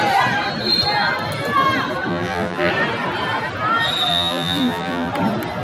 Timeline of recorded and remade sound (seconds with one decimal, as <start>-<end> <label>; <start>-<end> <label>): 0.0-2.1 recorded; 2.1-2.7 remade; 2.7-4.1 recorded; 4.1-5.1 remade; 5.1-5.6 recorded